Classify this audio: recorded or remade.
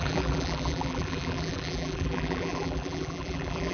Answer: remade